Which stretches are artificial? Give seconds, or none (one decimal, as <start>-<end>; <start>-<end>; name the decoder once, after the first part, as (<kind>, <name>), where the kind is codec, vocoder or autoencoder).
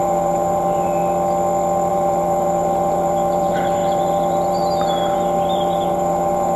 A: 0.0-1.0 (vocoder, BigVGAN v2); 1.9-6.6